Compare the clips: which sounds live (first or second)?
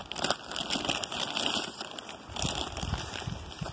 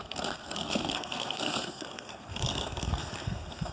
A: first